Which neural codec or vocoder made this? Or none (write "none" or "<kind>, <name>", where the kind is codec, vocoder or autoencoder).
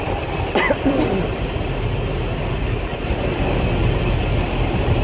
none